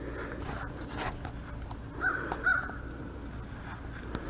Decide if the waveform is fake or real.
real